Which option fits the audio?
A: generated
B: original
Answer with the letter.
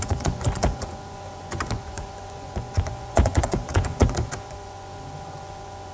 A